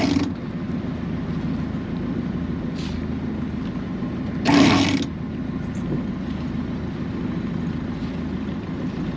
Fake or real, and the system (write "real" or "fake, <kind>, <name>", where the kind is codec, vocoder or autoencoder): real